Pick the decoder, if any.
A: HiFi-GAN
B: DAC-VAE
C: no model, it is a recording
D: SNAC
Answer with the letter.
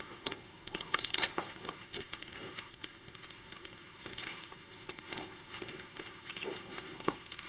D